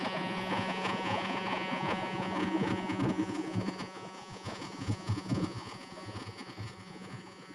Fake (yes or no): yes